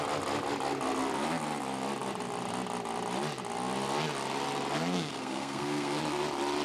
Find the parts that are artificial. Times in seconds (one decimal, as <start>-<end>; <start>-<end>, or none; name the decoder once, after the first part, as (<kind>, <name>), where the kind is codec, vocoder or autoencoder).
4.9-6.0 (codec, SNAC)